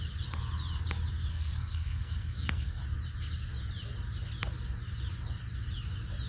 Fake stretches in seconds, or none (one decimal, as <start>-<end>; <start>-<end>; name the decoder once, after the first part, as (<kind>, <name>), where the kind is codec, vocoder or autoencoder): 1.3-2.8 (codec, SNAC)